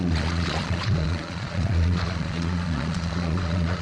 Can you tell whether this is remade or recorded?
remade